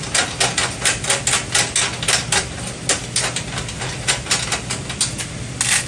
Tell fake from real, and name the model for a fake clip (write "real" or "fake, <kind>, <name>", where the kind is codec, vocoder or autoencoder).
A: real